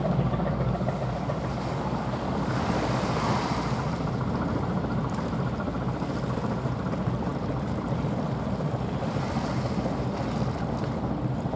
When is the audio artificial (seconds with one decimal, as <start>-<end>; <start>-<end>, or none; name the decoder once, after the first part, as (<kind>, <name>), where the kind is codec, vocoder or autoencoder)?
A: 0.0-3.0 (codec, DAC)